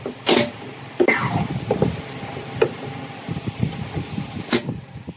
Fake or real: real